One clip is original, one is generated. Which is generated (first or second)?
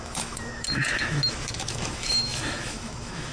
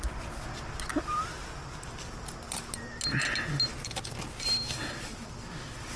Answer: first